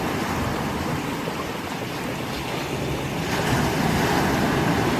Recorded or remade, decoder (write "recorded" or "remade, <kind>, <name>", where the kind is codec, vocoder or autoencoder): recorded